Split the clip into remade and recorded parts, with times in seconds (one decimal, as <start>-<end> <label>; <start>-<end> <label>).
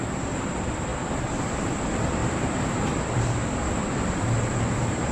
0.0-0.9 recorded; 0.9-1.6 remade; 1.6-2.2 recorded; 2.2-3.7 remade; 3.7-5.1 recorded